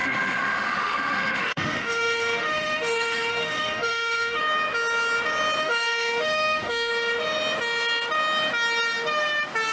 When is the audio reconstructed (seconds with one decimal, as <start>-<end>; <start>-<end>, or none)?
0.0-4.4; 5.6-6.9